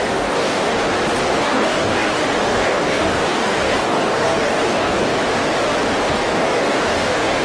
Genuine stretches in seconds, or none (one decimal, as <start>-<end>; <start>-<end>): 0.7-1.3; 5.1-6.1